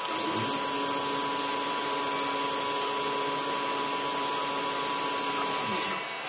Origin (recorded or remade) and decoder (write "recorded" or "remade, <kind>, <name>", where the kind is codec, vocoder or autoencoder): recorded